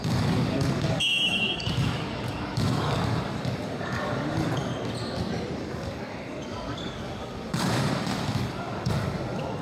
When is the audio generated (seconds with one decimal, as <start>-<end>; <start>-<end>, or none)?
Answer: 0.0-4.7; 5.6-9.6